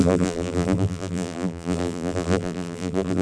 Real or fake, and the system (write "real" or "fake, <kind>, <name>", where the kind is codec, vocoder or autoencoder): fake, vocoder, BigVGAN v2